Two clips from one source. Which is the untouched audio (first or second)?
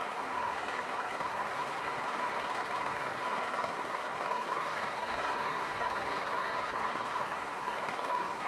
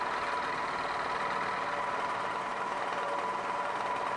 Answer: second